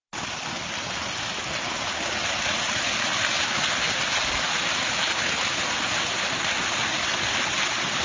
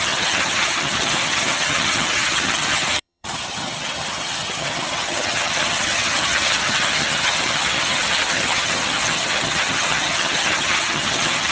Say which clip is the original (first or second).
first